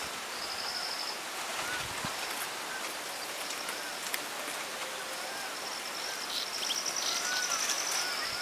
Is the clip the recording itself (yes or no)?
yes